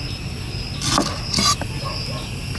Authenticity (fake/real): real